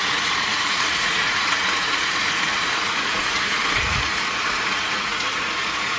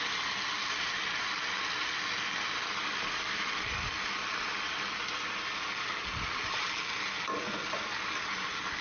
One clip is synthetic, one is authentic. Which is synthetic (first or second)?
first